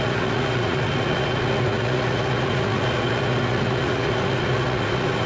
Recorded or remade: remade